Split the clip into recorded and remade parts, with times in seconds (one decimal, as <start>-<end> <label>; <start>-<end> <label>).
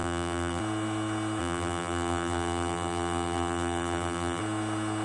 0.0-0.6 remade; 0.6-1.4 recorded; 1.4-4.4 remade; 4.4-5.0 recorded